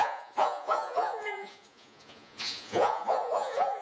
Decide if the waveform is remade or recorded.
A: remade